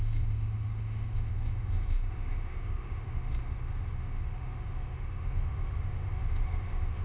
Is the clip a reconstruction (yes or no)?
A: yes